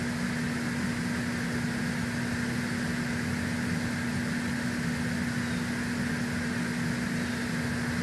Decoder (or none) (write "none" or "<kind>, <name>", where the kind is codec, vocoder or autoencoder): none